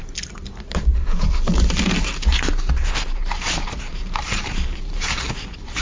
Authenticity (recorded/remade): remade